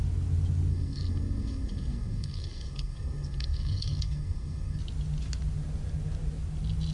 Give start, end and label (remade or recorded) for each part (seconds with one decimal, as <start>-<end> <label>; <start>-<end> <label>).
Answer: 0.0-0.7 recorded; 0.7-4.8 remade; 4.8-6.9 recorded